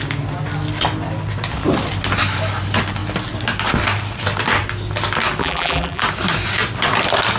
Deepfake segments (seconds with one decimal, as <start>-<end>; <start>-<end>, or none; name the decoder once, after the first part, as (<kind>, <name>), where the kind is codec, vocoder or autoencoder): 5.4-6.0 (vocoder, BigVGAN v2)